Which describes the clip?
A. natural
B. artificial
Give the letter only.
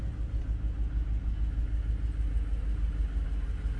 A